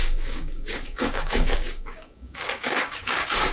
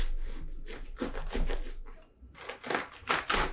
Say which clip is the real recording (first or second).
second